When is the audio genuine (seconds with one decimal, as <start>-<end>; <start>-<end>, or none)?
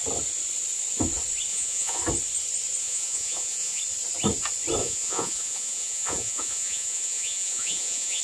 0.0-1.5; 2.0-2.8; 3.8-4.8